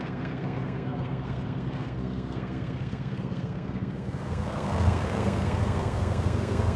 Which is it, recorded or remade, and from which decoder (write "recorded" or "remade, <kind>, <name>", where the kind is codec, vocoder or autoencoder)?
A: remade, codec, SNAC